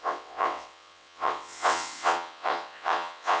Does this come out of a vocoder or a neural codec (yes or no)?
yes